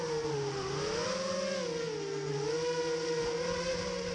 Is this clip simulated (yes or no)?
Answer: no